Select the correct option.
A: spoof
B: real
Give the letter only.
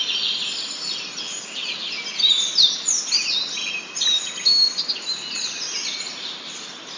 B